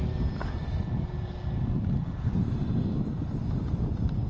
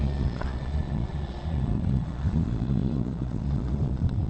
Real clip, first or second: first